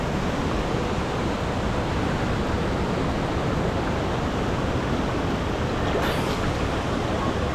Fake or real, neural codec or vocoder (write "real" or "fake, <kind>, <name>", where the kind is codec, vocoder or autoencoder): real